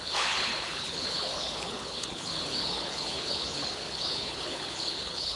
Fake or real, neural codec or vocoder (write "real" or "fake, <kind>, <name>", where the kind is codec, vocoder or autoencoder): fake, codec, HILCodec